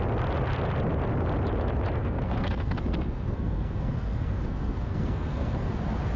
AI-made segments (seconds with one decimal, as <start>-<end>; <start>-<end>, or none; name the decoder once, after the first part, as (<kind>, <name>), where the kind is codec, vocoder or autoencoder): 2.0-5.7 (codec, SNAC)